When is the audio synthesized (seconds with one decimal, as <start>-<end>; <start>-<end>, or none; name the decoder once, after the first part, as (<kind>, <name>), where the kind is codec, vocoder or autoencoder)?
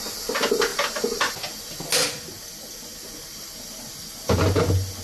none